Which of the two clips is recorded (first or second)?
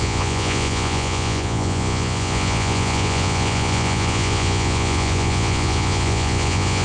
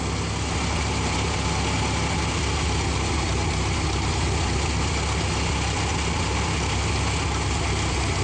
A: second